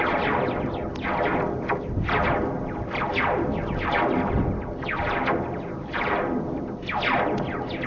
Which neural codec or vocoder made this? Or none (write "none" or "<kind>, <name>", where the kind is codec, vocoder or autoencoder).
none